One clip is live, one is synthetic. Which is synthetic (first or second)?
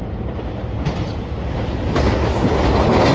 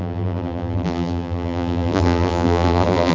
second